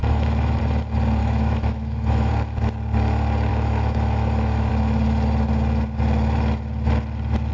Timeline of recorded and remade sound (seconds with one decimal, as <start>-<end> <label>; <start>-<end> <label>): 0.0-0.6 remade; 0.6-1.2 recorded; 1.2-2.3 remade; 2.3-3.5 recorded; 3.5-4.7 remade; 4.7-7.5 recorded